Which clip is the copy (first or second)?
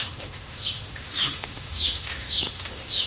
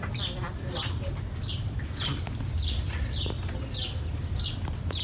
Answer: first